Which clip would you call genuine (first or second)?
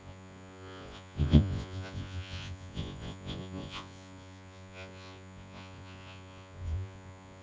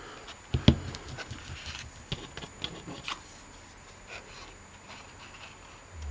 second